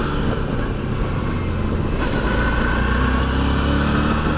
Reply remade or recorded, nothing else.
recorded